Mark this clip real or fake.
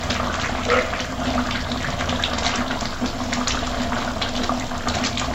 real